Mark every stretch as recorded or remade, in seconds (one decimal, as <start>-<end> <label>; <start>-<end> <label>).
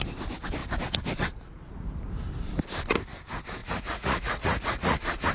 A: 0.0-3.6 recorded; 3.6-5.3 remade